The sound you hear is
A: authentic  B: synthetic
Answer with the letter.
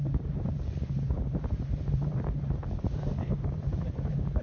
B